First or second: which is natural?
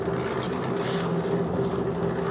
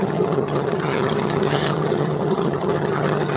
first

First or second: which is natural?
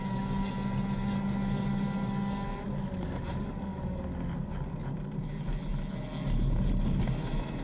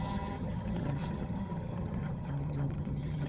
first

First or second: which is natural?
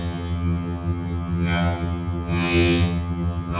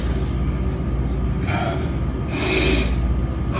second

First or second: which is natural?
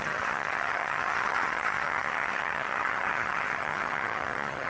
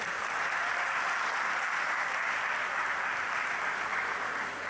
second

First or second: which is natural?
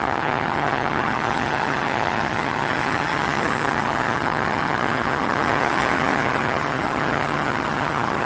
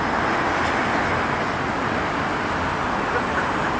second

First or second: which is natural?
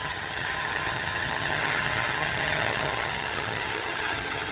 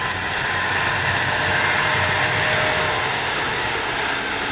second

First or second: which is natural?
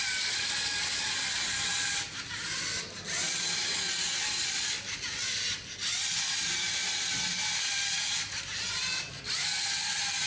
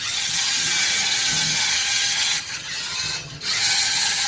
first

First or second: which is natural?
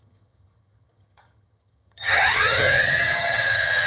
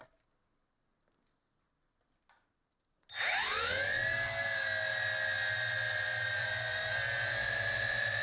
second